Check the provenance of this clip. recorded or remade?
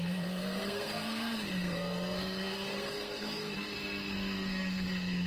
remade